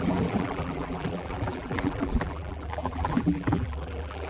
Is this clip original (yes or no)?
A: no